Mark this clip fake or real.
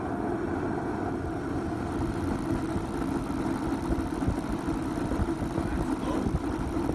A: real